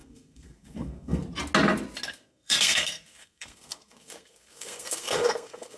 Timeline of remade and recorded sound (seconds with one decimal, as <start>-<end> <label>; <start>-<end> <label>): 0.0-1.2 remade; 1.2-2.1 recorded; 2.1-5.8 remade